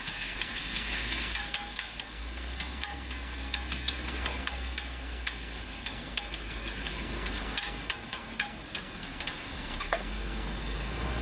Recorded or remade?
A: remade